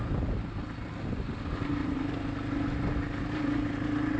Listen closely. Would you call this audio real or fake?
real